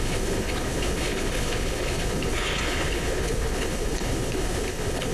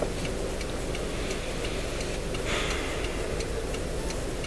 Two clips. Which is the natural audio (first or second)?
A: second